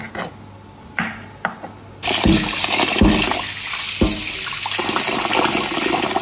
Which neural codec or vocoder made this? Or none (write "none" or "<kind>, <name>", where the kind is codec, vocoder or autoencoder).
none